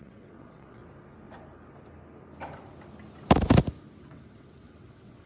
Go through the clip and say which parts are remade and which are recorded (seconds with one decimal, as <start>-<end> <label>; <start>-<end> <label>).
0.0-0.8 remade; 0.8-4.0 recorded; 4.0-5.3 remade